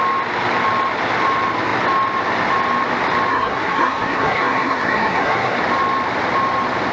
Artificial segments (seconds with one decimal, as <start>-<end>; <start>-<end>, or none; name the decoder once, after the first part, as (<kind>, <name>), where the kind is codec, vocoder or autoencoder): 3.3-5.6 (codec, SNAC)